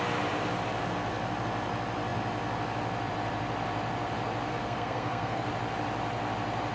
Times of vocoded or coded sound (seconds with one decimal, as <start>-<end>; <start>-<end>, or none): 4.5-5.5